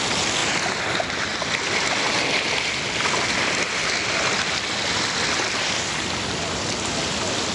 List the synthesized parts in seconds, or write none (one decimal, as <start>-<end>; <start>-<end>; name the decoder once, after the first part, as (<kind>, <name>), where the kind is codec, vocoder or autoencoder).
none